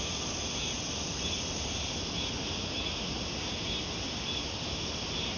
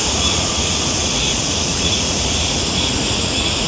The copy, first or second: second